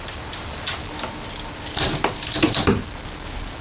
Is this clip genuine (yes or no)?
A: yes